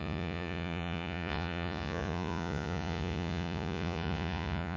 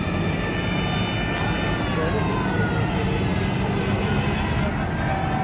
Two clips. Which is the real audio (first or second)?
second